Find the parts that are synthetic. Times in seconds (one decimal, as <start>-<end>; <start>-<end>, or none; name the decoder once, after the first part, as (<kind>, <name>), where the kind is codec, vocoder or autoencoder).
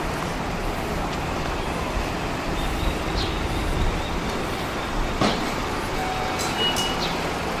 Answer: 0.0-0.6 (vocoder, BigVGAN v2); 3.8-6.0